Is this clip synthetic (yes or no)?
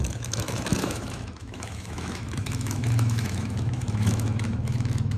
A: yes